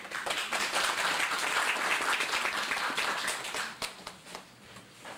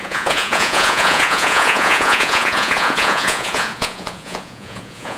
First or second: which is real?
first